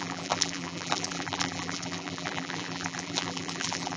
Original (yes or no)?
no